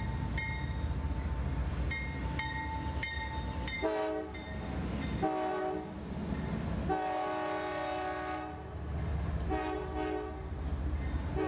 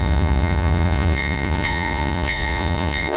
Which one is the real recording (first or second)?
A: first